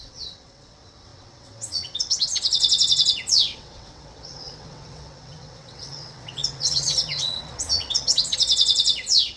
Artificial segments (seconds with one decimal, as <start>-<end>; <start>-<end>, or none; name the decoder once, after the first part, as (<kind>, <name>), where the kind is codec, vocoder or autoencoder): 0.0-9.4 (vocoder, WaveNeXt)